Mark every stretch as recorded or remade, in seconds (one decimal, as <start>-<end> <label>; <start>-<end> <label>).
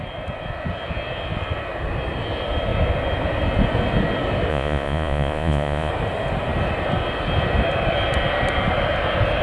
0.0-4.5 recorded; 4.5-5.9 remade; 5.9-9.4 recorded